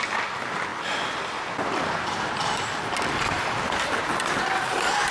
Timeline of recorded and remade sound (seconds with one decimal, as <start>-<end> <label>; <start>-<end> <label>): 0.0-0.7 recorded; 0.7-3.8 remade; 3.8-5.1 recorded